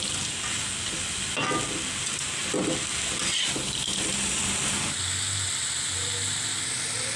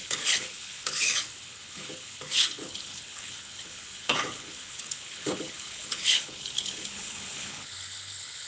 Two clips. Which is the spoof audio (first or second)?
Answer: second